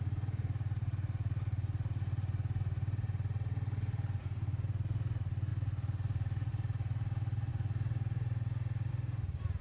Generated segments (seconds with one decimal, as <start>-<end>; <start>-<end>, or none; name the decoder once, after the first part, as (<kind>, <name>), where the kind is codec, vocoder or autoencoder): none

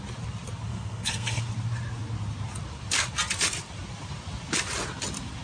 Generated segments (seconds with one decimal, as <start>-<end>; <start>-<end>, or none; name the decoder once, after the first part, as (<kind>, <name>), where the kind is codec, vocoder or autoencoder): 0.7-1.4 (codec, SNAC)

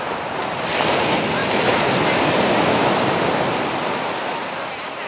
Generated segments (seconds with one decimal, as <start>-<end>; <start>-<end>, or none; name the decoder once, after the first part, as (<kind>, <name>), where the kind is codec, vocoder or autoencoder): none

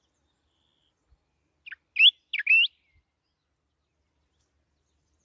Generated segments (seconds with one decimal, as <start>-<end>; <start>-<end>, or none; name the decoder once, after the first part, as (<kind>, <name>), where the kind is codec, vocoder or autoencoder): none

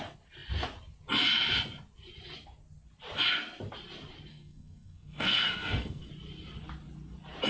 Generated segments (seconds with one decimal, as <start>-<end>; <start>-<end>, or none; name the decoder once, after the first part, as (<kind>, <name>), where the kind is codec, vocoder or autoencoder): 4.3-6.1 (codec, SNAC)

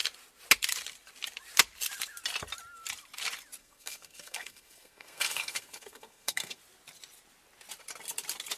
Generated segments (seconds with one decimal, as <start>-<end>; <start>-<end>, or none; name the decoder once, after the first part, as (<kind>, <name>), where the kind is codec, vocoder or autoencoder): 3.6-6.6 (codec, SNAC)